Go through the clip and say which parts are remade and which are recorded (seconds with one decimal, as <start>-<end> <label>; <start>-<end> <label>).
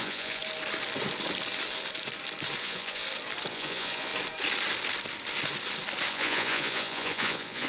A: 0.0-0.4 remade; 0.4-2.6 recorded; 2.6-3.0 remade; 3.0-3.5 recorded; 3.5-4.1 remade; 4.1-6.1 recorded; 6.1-7.7 remade